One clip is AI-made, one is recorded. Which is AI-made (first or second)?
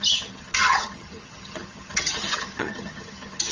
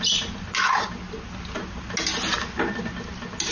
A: first